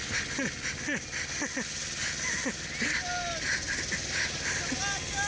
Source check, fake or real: real